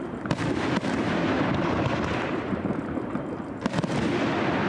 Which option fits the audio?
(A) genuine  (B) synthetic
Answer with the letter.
A